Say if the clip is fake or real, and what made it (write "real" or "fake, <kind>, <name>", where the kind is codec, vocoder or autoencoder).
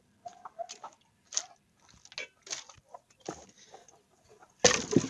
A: real